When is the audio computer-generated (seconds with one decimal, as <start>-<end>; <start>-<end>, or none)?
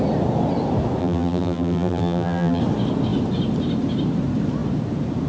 1.0-2.6